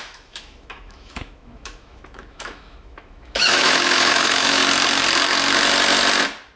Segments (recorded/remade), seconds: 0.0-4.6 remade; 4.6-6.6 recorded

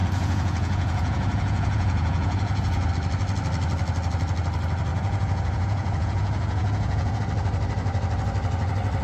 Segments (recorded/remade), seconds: 0.0-2.9 remade; 2.9-4.9 recorded; 4.9-7.2 remade; 7.2-9.0 recorded

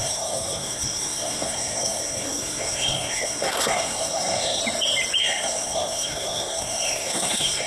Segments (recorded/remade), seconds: 0.0-4.6 remade; 4.6-5.2 recorded; 5.2-7.7 remade

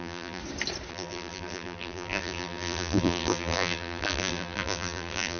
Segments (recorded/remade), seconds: 0.0-0.4 remade; 0.4-0.9 recorded; 0.9-5.4 remade